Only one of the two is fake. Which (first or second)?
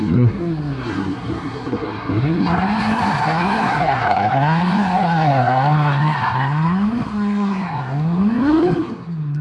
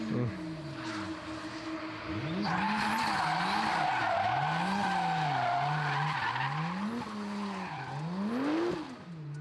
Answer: first